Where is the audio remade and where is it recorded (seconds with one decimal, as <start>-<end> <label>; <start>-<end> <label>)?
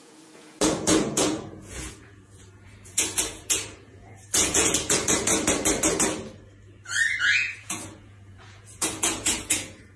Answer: 0.0-5.3 remade; 5.3-7.2 recorded; 7.2-10.0 remade